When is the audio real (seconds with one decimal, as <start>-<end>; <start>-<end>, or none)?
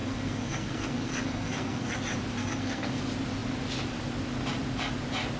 2.0-2.4; 3.0-5.4